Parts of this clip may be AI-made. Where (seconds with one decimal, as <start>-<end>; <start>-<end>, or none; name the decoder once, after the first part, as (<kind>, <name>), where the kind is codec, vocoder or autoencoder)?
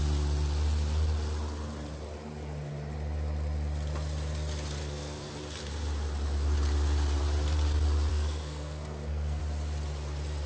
4.8-5.3 (codec, SNAC); 8.1-9.4